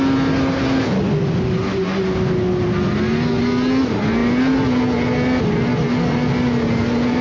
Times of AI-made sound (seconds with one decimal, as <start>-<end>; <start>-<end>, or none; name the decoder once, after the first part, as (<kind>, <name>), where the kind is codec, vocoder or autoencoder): none